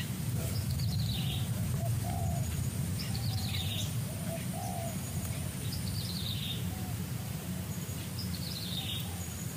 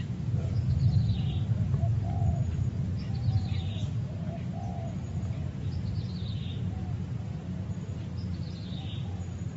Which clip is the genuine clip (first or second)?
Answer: second